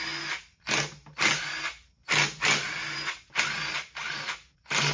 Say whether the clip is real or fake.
real